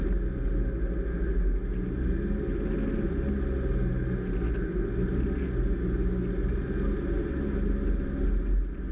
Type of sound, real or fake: real